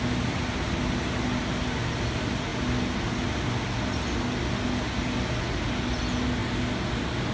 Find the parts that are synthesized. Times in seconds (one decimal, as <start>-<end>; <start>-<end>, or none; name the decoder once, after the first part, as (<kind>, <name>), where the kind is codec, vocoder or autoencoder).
none